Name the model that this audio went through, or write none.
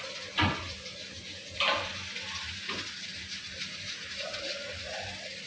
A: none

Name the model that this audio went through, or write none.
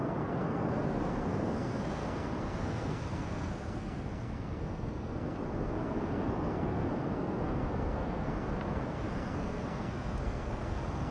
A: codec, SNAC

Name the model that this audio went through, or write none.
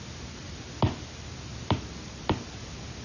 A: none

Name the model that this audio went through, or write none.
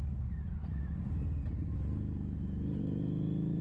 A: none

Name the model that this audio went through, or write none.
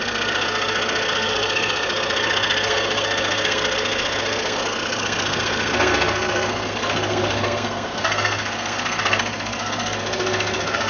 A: codec, SNAC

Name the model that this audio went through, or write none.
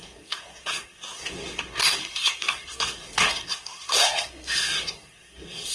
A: codec, SNAC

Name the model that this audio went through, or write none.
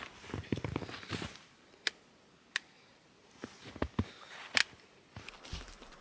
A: none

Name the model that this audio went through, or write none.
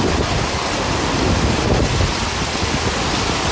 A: none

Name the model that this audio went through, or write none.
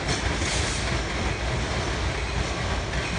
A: none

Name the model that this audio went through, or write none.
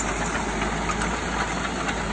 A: none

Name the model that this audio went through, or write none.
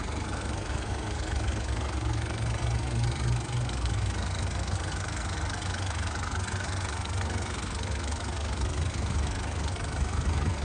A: codec, SNAC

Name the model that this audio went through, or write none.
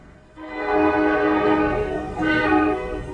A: codec, SNAC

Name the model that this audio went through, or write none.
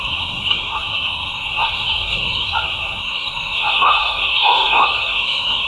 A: codec, SNAC